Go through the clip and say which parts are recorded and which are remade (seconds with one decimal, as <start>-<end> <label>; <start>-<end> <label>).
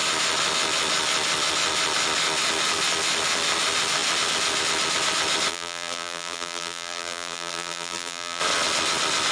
0.0-5.5 recorded; 5.5-8.4 remade; 8.4-9.3 recorded